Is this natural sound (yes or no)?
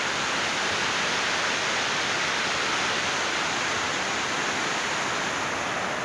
yes